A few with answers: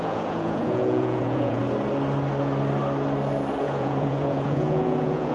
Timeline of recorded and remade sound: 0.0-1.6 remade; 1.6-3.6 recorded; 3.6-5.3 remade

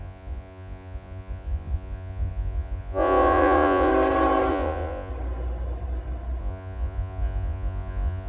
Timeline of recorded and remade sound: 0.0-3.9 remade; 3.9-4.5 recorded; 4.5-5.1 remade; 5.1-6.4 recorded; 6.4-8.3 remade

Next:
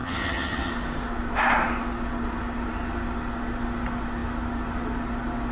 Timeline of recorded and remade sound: 0.0-0.7 remade; 0.7-5.5 recorded